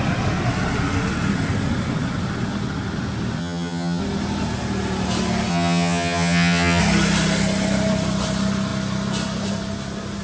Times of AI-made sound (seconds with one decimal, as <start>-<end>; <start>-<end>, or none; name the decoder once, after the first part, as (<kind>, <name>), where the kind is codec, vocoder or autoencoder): 3.4-4.0 (vocoder, HiFi-GAN); 5.5-6.8